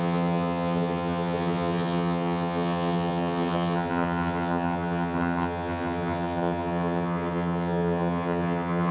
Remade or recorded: remade